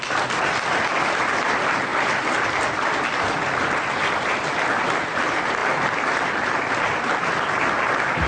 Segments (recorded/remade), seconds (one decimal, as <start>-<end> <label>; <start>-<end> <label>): 0.0-8.3 recorded

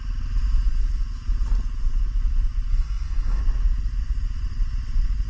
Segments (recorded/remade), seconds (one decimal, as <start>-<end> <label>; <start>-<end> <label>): 0.0-2.7 recorded; 2.7-3.4 remade; 3.4-5.3 recorded

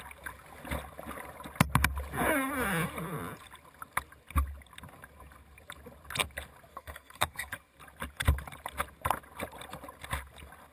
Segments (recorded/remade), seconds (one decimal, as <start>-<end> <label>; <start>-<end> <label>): 0.0-6.7 recorded; 6.7-7.5 remade; 7.5-10.7 recorded